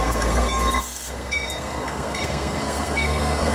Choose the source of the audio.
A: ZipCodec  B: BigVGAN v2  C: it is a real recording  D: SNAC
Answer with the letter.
D